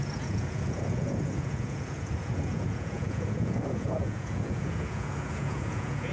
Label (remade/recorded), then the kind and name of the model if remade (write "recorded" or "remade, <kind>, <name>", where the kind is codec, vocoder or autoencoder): remade, vocoder, Vocos